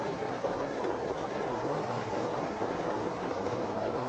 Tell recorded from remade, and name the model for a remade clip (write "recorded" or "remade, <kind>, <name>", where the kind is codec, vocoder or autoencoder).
remade, codec, SNAC